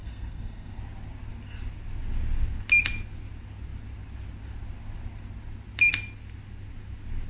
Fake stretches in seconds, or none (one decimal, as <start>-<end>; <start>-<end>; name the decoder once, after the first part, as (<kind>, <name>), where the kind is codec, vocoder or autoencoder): 0.0-0.8 (codec, SNAC)